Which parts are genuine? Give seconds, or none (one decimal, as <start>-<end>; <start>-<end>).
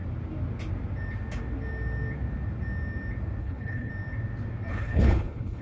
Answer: 0.0-3.4; 3.9-4.7